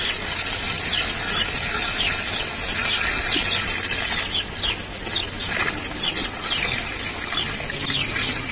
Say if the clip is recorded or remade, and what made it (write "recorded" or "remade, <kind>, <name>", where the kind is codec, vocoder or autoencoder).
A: recorded